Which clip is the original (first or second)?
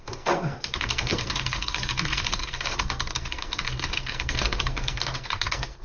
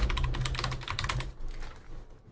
second